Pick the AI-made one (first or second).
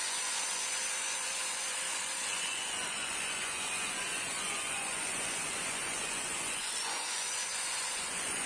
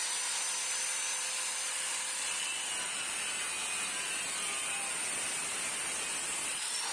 first